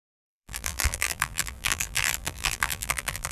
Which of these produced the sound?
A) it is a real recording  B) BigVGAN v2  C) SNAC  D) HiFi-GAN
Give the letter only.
B